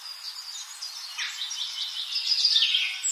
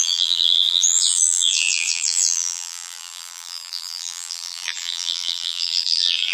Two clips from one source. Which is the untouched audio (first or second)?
first